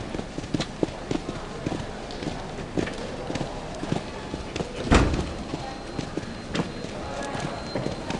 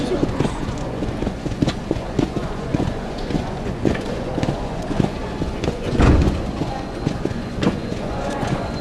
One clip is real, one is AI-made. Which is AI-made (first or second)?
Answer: second